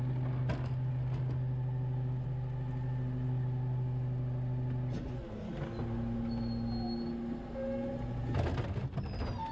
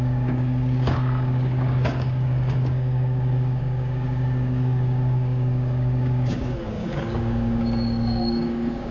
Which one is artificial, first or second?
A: second